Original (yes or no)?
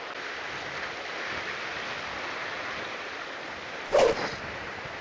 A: yes